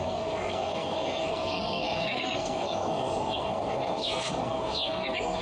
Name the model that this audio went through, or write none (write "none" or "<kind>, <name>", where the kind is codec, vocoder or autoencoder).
codec, SNAC